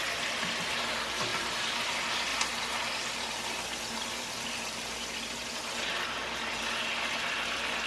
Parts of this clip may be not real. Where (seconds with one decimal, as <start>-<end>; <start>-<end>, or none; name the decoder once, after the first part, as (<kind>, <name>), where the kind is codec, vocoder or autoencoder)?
0.0-2.3 (vocoder, BigVGAN v2); 4.7-5.4; 6.6-7.9